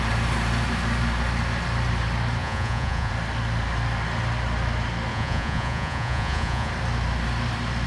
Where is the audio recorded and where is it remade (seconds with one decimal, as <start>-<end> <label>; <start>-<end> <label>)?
0.0-2.4 recorded; 2.4-3.1 remade; 3.1-5.1 recorded; 5.1-6.7 remade; 6.7-7.9 recorded